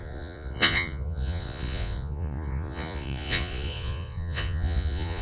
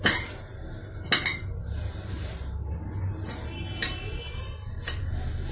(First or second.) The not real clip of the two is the first